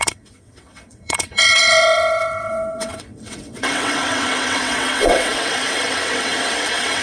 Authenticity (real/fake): fake